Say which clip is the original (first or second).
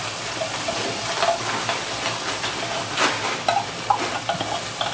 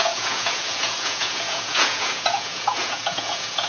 first